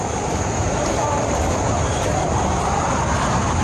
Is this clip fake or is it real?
fake